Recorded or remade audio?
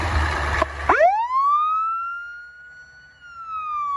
recorded